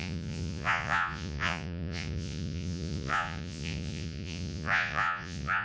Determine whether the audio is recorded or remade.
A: remade